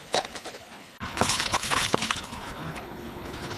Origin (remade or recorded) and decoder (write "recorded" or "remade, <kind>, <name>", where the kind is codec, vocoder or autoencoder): remade, codec, HILCodec